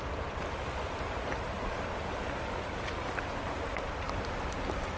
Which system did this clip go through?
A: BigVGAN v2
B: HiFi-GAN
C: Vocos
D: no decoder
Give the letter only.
D